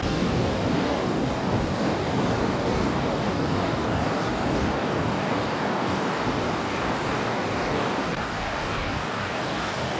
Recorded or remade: remade